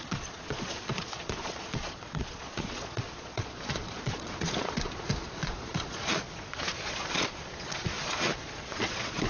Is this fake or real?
fake